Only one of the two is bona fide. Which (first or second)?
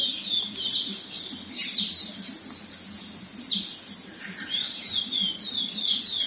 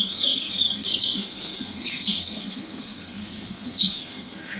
first